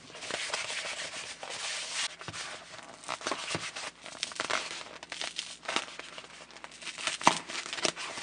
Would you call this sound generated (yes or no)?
no